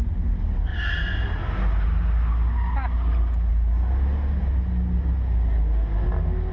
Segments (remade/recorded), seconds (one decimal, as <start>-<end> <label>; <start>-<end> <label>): 0.0-6.5 recorded

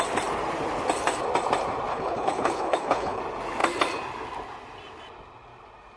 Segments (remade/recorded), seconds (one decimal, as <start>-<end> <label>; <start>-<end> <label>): 0.0-1.9 recorded; 1.9-3.2 remade; 3.2-6.0 recorded

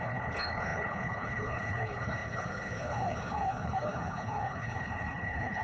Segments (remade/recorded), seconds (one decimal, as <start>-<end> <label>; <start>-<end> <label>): 0.0-5.6 remade

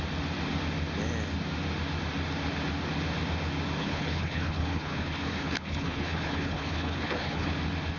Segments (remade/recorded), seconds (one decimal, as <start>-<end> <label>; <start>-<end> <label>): 0.0-3.8 recorded; 3.8-7.5 remade; 7.5-8.0 recorded

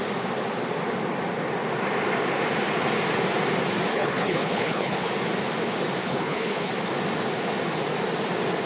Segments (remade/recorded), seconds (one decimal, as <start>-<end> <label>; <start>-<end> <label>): 0.0-3.9 recorded; 3.9-5.1 remade; 5.1-6.0 recorded; 6.0-6.7 remade; 6.7-8.7 recorded

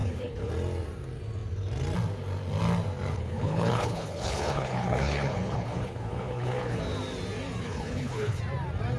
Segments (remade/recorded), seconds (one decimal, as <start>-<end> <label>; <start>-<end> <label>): 0.0-0.5 remade; 0.5-3.1 recorded; 3.1-6.8 remade; 6.8-7.6 recorded; 7.6-8.4 remade; 8.4-9.0 recorded

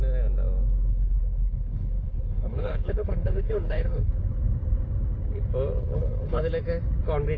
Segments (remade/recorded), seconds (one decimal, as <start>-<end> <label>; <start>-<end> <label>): 0.0-0.9 recorded; 0.9-4.1 remade; 4.1-5.8 recorded; 5.8-6.4 remade; 6.4-7.4 recorded

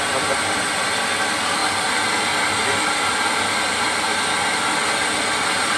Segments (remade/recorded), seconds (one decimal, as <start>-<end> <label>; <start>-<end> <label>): 0.0-5.8 recorded